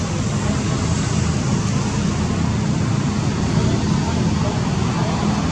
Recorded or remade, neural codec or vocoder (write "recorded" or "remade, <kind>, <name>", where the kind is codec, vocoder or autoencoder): recorded